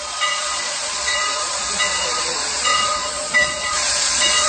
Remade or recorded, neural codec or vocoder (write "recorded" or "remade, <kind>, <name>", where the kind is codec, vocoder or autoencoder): remade, vocoder, Vocos